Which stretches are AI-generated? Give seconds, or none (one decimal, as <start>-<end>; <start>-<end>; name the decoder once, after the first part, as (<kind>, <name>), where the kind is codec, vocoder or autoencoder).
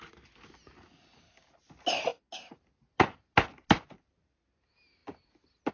none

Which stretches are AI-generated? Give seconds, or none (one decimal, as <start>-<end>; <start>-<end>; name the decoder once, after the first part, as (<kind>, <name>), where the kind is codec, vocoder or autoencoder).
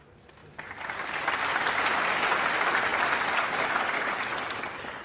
none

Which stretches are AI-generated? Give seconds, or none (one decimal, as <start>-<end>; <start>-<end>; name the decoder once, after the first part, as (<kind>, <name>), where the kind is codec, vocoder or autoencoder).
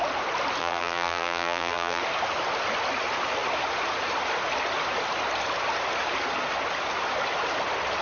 0.6-2.0 (vocoder, BigVGAN v2)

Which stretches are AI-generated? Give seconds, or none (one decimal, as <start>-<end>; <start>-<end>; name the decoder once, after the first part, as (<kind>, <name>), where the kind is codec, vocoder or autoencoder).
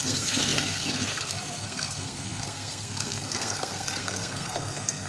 0.0-5.1 (codec, SNAC)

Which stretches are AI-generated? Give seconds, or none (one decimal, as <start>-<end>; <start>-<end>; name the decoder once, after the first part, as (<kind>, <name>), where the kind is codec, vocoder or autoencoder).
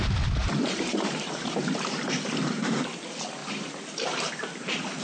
0.4-2.7 (vocoder, BigVGAN v2); 3.4-4.3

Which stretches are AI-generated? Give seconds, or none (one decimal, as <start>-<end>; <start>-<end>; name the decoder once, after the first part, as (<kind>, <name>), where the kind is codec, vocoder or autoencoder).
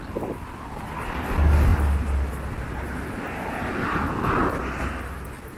none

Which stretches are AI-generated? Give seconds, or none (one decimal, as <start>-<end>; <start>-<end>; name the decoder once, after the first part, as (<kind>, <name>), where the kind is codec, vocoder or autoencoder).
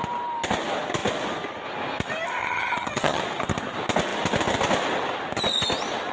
2.4-3.2 (vocoder, HiFi-GAN)